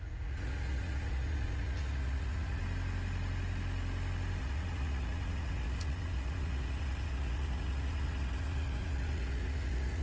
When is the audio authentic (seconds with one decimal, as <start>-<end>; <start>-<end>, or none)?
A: 2.6-4.4